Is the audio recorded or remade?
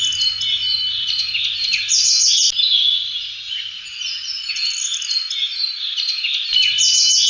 recorded